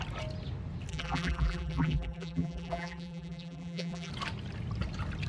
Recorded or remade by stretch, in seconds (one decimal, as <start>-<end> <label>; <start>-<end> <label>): 0.0-0.9 recorded; 0.9-4.1 remade; 4.1-5.3 recorded